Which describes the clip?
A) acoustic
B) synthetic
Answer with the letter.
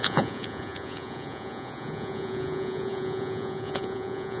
B